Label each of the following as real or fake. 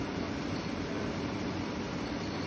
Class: fake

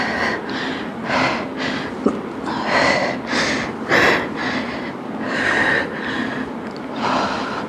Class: real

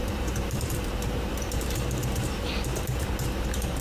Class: fake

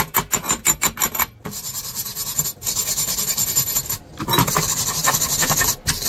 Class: real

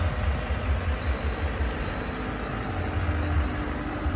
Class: real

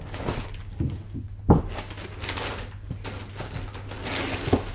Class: real